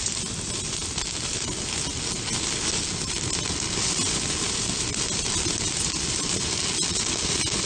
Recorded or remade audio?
recorded